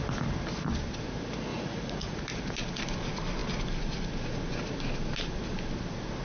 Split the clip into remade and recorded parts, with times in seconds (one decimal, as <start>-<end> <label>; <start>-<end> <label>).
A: 0.0-1.5 recorded; 1.5-2.2 remade; 2.2-6.2 recorded